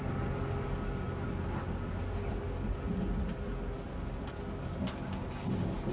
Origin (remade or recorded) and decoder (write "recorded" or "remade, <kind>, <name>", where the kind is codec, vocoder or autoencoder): recorded